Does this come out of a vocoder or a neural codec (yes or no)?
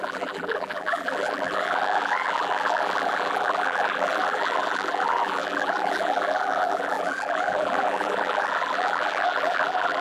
yes